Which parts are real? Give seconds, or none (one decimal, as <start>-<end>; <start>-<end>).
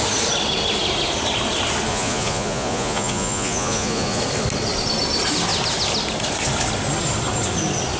0.0-1.9; 4.2-8.0